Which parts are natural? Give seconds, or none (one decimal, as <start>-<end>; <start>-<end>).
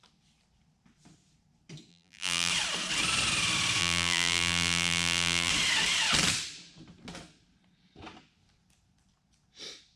0.0-1.9; 2.5-3.8; 5.5-10.0